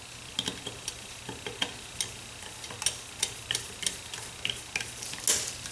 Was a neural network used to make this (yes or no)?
no